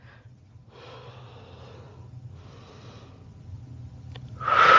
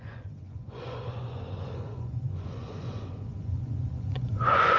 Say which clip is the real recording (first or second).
first